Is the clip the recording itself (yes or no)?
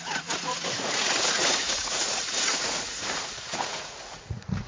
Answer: no